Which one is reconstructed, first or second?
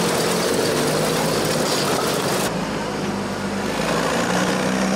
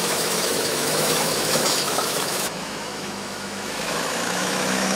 second